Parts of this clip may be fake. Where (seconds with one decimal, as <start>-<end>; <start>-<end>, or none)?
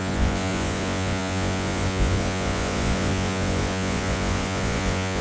0.0-5.2